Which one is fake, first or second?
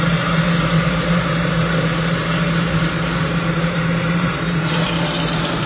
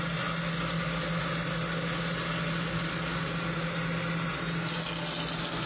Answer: first